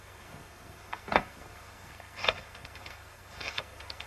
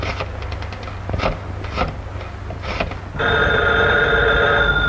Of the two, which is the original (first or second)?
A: second